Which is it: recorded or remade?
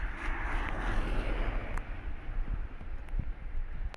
recorded